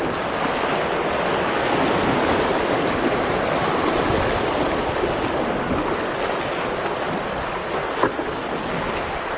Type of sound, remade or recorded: recorded